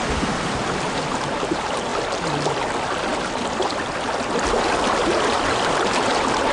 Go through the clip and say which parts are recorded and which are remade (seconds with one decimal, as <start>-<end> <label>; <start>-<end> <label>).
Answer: 0.0-1.9 recorded; 1.9-2.6 remade; 2.6-6.5 recorded